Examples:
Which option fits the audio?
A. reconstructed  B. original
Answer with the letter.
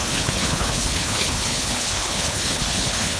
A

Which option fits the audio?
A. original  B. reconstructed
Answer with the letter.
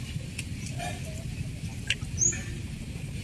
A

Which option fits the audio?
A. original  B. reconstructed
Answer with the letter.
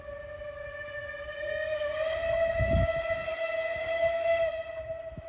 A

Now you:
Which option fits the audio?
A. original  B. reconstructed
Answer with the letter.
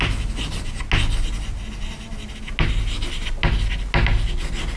A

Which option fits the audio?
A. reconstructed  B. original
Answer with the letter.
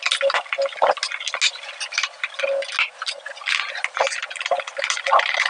B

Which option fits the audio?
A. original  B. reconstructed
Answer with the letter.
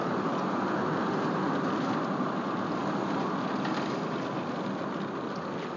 A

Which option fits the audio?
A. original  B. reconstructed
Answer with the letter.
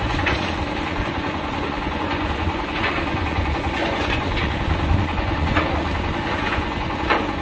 B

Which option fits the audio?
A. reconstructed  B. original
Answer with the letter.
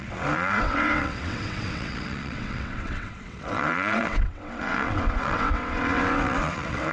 A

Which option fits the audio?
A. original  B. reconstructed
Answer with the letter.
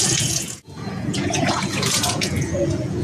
B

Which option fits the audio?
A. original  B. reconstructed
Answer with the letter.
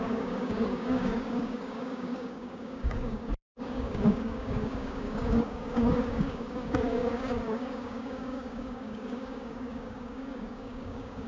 B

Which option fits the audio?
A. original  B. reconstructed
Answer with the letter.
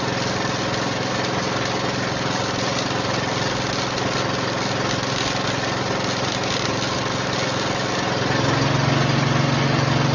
A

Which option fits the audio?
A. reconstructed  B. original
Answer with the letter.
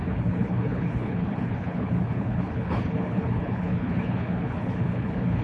A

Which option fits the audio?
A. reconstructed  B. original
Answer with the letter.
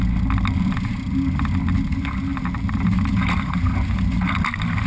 B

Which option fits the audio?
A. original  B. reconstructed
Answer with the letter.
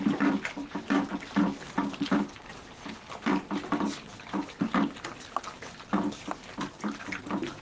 A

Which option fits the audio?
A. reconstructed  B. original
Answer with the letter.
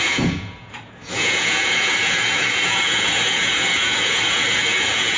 A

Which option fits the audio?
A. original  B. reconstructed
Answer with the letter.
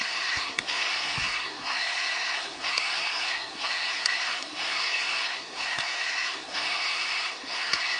B